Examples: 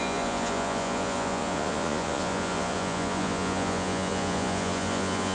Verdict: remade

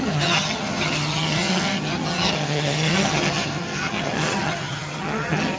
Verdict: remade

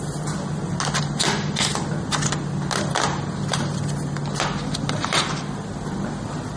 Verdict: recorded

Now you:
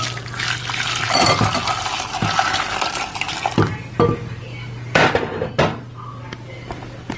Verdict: recorded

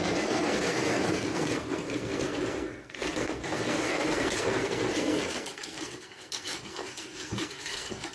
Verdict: remade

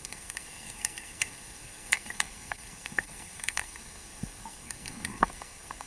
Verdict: remade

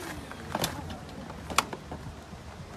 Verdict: recorded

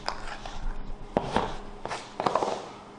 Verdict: recorded